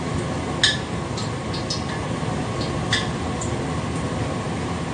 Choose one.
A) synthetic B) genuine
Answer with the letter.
B